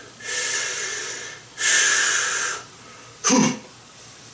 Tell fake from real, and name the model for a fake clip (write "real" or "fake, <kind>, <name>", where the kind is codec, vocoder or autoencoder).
real